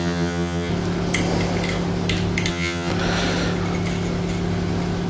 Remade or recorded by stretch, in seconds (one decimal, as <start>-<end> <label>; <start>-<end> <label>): 0.0-0.7 remade; 0.7-2.5 recorded; 2.5-2.9 remade; 2.9-5.1 recorded